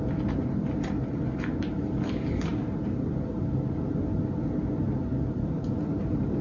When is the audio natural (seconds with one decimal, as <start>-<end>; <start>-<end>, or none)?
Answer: 0.0-6.4